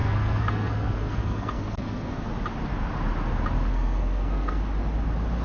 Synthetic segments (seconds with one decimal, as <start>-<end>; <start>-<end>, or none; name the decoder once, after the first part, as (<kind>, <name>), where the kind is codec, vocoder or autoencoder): 0.0-2.3 (codec, SNAC); 3.7-4.6